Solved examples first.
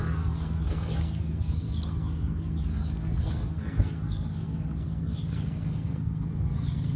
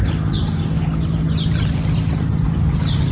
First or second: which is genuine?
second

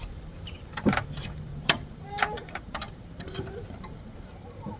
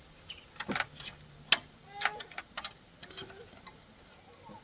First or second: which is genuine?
second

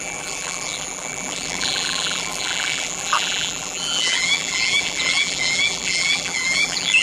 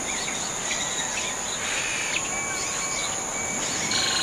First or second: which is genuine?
second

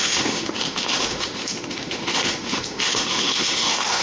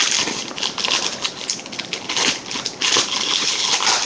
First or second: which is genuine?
second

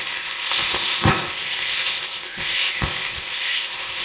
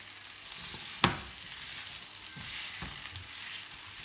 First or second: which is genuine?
second